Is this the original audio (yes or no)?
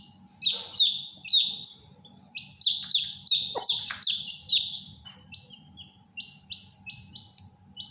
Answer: yes